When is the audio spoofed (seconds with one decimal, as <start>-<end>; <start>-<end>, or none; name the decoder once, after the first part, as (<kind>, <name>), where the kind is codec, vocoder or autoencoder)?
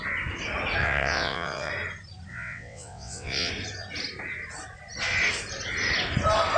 0.8-1.7 (vocoder, WaveNeXt); 2.3-3.5